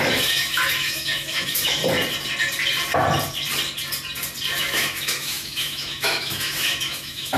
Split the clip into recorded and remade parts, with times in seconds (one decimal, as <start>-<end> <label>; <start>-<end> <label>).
0.0-1.8 remade; 1.8-4.6 recorded; 4.6-7.4 remade